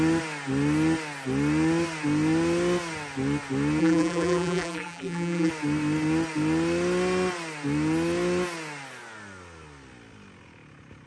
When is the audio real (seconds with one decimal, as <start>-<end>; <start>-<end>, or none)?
0.0-3.8; 5.5-11.1